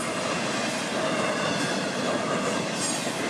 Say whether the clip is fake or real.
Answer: real